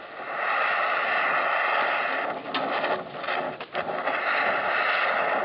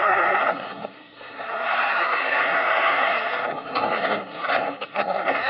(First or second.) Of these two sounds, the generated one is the second